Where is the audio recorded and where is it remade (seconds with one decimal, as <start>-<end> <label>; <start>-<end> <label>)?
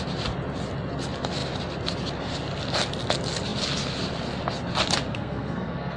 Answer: 0.0-5.1 recorded; 5.1-6.0 remade